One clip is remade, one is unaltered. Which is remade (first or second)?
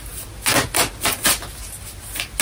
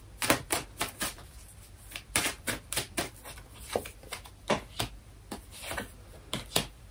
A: second